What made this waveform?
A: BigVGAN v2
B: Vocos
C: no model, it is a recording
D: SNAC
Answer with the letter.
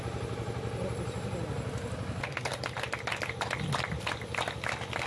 C